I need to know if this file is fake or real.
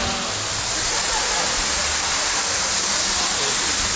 real